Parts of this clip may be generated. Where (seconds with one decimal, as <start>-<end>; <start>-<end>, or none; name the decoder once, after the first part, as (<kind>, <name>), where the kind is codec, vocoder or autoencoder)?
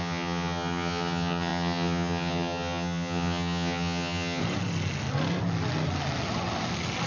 0.0-4.4 (vocoder, HiFi-GAN)